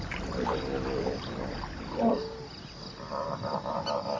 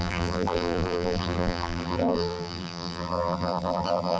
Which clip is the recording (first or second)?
first